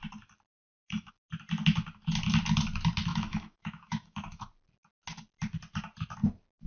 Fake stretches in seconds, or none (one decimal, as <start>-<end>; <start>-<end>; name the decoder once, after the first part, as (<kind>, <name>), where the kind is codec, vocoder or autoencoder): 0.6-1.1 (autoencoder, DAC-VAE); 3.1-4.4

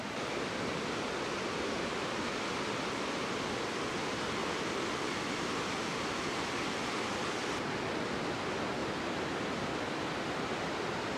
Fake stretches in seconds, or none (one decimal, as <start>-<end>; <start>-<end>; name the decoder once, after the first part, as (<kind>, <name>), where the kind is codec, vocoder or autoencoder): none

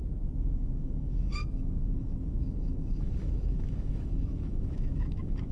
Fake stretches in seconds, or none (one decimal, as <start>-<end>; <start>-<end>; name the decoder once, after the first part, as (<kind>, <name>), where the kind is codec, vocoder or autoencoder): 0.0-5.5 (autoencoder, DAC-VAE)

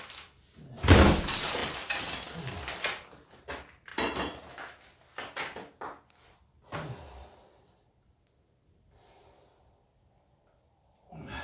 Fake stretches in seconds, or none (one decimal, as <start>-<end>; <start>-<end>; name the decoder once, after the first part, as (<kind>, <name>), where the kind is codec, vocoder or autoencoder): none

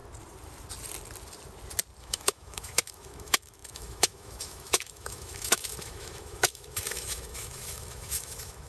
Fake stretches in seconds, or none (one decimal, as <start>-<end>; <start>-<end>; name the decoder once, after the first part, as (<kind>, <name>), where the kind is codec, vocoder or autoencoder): 2.0-8.7 (autoencoder, DAC-VAE)